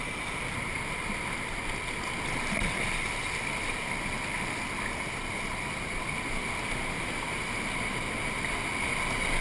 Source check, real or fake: real